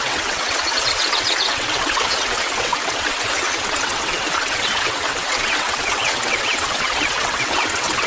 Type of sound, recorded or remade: remade